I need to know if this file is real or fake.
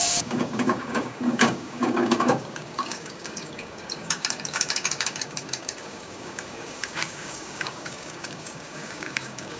fake